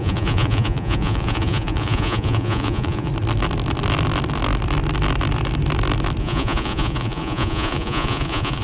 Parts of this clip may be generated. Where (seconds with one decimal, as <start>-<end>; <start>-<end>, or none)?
0.0-3.1; 6.2-8.6